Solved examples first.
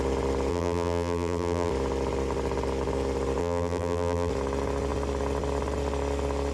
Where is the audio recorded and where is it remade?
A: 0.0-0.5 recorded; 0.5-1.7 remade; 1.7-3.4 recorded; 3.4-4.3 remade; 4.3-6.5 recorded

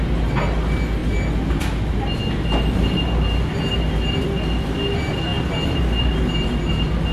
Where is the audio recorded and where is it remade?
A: 0.0-7.1 recorded

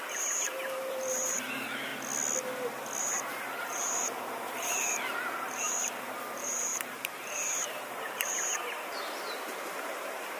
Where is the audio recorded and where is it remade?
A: 0.0-1.9 remade; 1.9-3.0 recorded; 3.0-10.4 remade